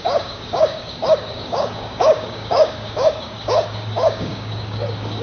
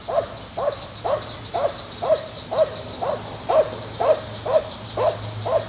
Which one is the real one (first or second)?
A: second